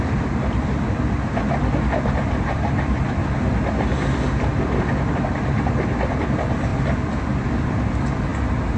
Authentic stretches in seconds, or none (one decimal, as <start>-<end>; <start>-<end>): 3.2-5.1